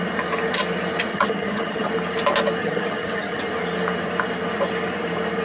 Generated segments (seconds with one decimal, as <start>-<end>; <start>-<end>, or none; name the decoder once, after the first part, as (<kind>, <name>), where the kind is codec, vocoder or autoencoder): 1.1-1.9 (vocoder, HiFi-GAN); 2.6-3.4